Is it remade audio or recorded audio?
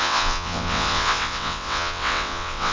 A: remade